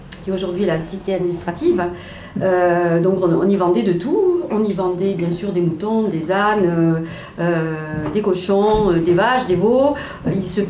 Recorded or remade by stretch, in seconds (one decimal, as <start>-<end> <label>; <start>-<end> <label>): 0.0-0.8 recorded; 0.8-1.5 remade; 1.5-10.7 recorded